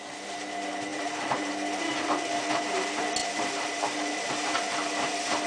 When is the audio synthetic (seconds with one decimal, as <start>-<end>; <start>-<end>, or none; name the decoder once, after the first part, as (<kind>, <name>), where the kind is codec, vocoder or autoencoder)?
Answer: 0.9-1.5 (vocoder, BigVGAN v2); 3.2-4.3